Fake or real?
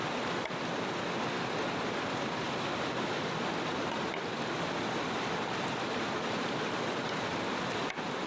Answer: real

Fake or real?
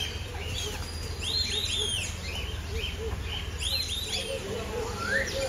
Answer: real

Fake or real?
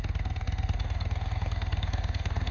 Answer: fake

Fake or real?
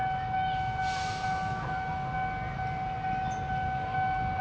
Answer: real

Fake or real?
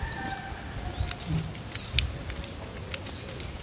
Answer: real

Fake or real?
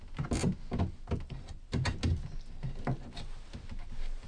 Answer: real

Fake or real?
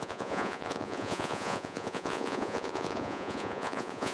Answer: fake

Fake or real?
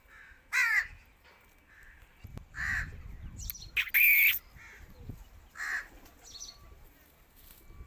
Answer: real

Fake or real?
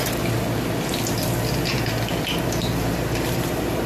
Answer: real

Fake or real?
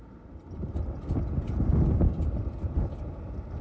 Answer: real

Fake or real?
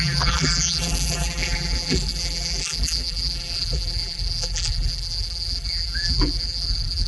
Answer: fake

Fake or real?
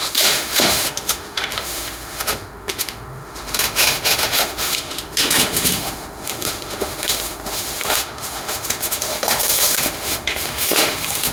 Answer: fake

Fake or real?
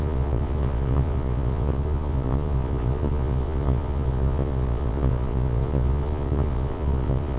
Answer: fake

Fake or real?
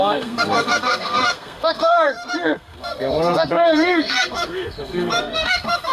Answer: fake